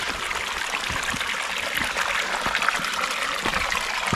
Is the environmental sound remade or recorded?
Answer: remade